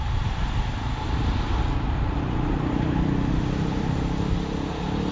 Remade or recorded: recorded